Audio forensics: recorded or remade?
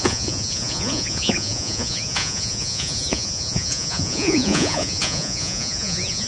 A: remade